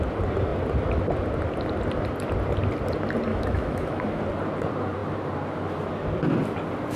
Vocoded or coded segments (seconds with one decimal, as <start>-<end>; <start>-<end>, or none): 3.3-4.2